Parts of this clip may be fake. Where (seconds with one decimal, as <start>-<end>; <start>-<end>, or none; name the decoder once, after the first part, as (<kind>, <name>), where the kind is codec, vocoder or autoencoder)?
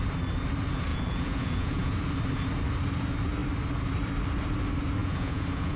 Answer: 0.9-1.9 (vocoder, Vocos); 5.0-5.8